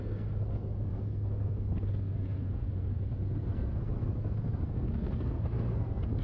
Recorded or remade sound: remade